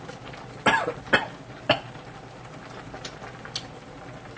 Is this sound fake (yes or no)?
no